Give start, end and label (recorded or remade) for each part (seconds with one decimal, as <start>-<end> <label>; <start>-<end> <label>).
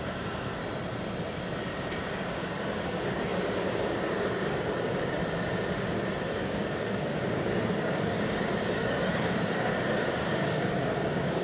0.0-0.6 remade; 0.6-2.0 recorded; 2.0-5.2 remade; 5.2-6.1 recorded; 6.1-11.4 remade